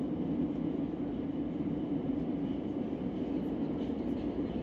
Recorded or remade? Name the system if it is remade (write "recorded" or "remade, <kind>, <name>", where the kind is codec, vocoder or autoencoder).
recorded